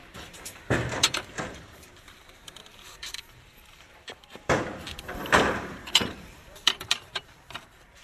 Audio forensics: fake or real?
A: fake